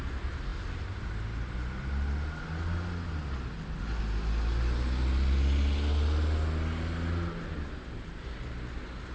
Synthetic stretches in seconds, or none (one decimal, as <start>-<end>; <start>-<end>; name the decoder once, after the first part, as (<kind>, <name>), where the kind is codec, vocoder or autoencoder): none